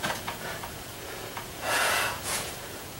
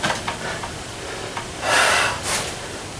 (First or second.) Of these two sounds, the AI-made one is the first